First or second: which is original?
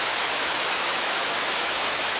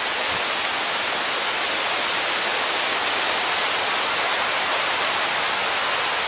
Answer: second